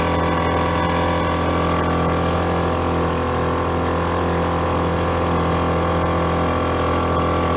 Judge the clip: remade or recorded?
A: recorded